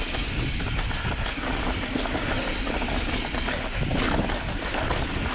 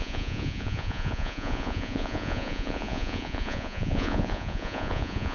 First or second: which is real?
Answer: first